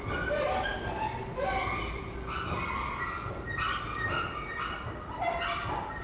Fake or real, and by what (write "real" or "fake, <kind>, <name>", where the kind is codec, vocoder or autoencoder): real